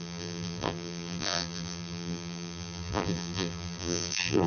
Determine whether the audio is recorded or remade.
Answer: remade